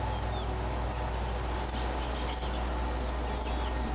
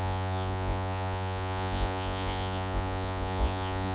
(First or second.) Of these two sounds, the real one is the first